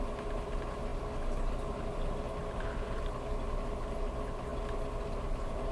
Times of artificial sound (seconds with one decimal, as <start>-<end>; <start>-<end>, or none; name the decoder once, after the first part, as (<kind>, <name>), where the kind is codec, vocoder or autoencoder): 2.4-3.4 (vocoder, BigVGAN v2)